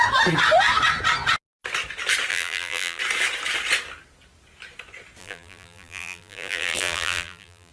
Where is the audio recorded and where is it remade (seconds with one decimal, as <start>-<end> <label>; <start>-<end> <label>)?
0.0-2.3 recorded; 2.3-3.0 remade; 3.0-5.2 recorded; 5.2-7.7 remade